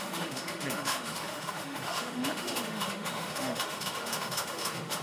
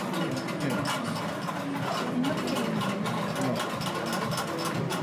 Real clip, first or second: second